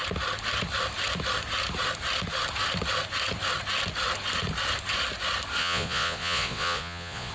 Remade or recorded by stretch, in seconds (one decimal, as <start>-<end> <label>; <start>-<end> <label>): 0.0-5.6 recorded; 5.6-7.3 remade